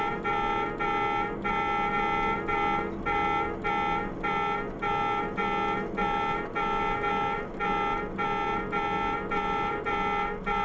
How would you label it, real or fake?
real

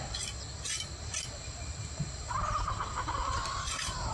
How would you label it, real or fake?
real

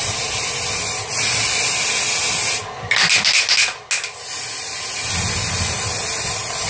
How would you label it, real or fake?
real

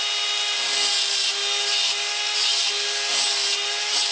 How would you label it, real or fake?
real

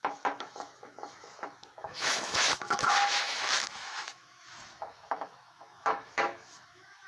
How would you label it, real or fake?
fake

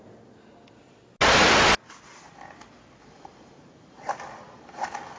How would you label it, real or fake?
real